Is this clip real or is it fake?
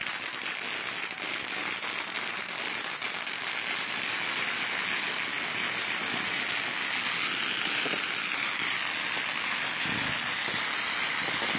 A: real